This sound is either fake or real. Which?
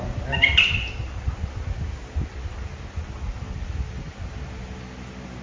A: real